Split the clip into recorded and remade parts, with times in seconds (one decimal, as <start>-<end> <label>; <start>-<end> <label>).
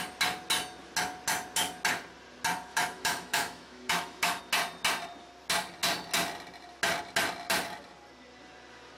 0.0-2.7 recorded; 2.7-4.4 remade; 4.4-9.0 recorded